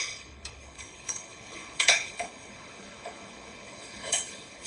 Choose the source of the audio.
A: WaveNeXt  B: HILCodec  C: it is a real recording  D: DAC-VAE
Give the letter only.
B